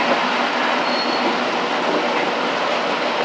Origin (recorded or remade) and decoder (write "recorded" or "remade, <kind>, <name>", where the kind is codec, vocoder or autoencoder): recorded